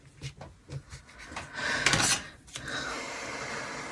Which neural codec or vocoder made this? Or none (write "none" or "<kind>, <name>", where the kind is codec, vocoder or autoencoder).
none